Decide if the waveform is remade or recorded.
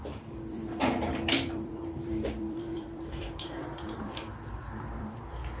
remade